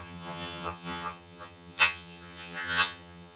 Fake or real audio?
fake